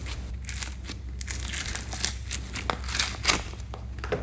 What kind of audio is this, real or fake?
real